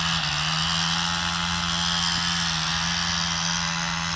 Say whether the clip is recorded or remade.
recorded